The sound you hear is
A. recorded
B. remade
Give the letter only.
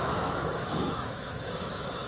B